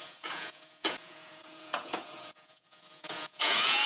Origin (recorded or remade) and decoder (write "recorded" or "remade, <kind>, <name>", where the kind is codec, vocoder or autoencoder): remade, vocoder, Vocos